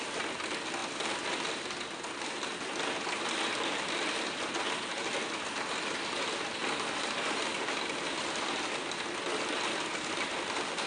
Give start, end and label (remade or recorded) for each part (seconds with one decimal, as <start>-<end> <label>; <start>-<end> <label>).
0.0-10.9 recorded